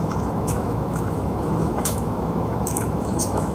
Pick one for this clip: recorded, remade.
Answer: remade